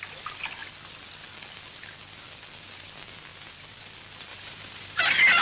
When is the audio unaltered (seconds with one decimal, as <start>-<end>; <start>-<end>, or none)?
0.0-4.3; 5.0-5.4